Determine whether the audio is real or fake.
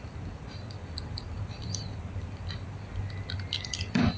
fake